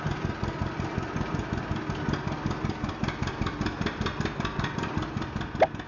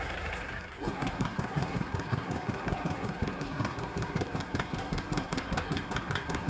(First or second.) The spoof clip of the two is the second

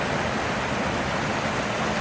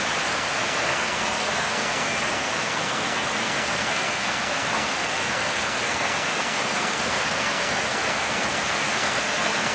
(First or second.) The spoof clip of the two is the second